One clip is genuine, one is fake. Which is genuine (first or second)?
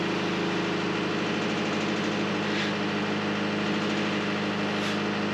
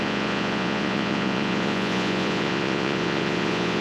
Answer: first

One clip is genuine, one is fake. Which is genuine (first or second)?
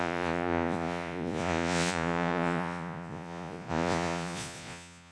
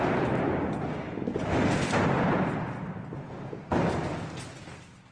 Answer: second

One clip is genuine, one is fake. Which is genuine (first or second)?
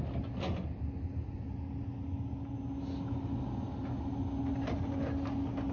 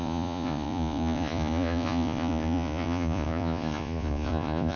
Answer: first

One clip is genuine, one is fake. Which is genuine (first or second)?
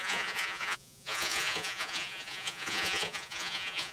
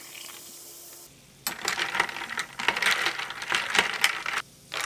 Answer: second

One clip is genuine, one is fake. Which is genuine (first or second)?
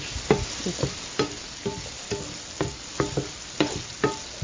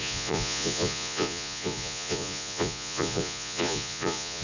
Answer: first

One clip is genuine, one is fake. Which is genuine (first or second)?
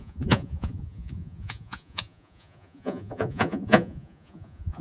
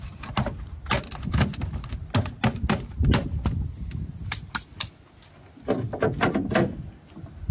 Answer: second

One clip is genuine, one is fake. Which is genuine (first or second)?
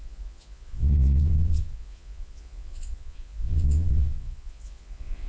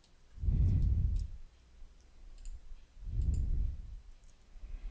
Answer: second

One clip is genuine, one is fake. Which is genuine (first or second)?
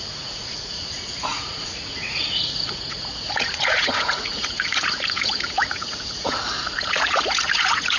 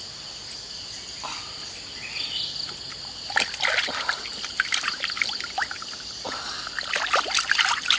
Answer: second